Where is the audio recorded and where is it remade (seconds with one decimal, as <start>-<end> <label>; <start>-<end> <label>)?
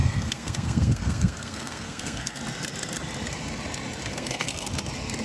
0.0-2.4 remade; 2.4-4.1 recorded; 4.1-4.7 remade; 4.7-5.2 recorded